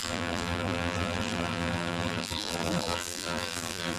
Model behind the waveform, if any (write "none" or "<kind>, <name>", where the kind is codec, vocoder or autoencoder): vocoder, BigVGAN v2